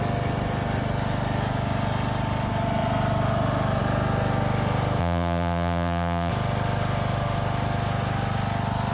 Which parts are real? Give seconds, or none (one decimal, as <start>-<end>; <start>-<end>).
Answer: 0.0-5.0; 6.3-8.9

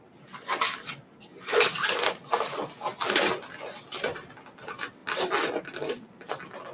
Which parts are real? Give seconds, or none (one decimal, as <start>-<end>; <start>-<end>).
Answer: 0.0-6.7

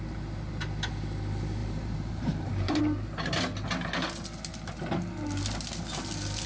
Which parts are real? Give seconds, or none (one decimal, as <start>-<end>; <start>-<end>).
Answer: 0.0-1.6; 2.8-6.5

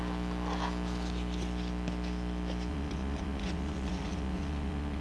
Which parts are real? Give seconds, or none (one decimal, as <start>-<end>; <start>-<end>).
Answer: 0.0-2.7

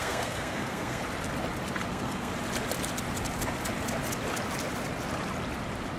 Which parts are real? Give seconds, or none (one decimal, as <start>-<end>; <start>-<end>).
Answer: 1.0-1.9; 2.3-6.0

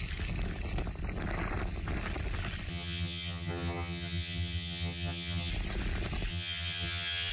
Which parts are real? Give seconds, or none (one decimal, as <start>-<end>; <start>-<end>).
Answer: 0.0-2.7; 5.5-6.3

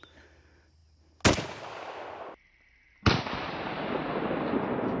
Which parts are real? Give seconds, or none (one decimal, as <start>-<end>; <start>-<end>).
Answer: 0.0-5.0